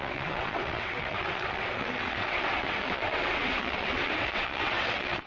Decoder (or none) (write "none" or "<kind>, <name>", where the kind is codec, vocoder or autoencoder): vocoder, WaveNeXt